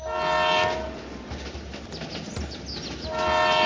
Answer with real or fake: real